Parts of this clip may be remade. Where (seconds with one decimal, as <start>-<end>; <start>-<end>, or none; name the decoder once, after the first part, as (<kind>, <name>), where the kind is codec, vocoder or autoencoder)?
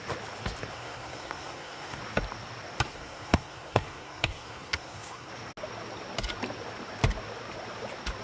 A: 0.7-2.0 (codec, SNAC); 2.9-5.3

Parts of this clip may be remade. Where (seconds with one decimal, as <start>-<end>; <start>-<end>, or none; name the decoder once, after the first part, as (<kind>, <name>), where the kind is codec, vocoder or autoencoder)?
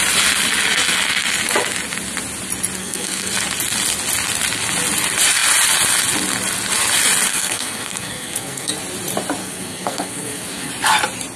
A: 2.8-3.3 (codec, SNAC); 7.3-8.7; 9.4-10.7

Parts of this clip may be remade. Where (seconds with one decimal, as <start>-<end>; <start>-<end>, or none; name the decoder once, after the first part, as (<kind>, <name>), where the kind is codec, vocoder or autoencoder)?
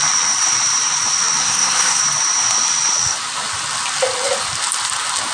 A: 1.4-2.0 (codec, SNAC)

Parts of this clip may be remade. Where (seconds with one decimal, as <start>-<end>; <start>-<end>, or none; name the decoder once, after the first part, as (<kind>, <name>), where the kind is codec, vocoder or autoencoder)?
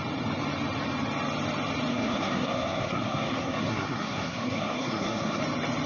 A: 1.9-5.4 (codec, SNAC)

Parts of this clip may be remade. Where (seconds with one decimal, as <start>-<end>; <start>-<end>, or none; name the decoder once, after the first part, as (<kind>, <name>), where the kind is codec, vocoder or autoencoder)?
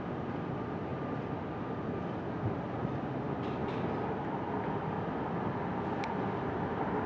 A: none